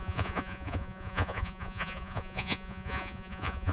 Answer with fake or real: fake